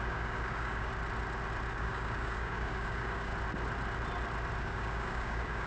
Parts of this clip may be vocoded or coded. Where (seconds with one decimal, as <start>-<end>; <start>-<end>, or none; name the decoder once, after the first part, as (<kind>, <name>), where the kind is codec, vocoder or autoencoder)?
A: 0.0-0.9 (codec, DAC); 1.7-3.3; 4.6-5.7